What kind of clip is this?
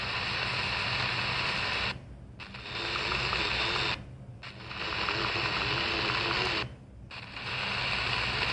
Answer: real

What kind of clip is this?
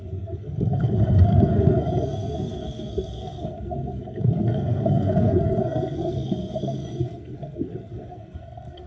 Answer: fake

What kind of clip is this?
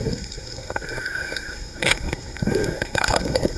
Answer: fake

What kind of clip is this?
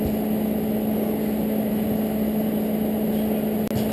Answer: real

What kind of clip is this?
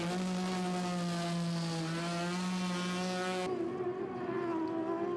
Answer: real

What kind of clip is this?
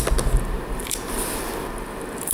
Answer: real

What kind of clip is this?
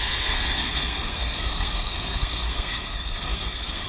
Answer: fake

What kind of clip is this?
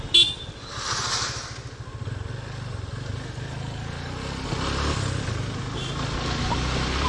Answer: real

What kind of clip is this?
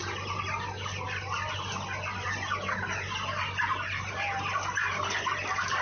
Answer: real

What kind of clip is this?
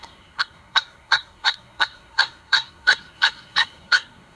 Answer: fake